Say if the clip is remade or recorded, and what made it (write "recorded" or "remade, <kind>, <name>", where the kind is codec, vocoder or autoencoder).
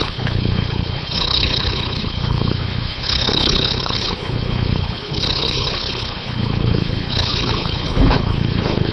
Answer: remade, codec, HILCodec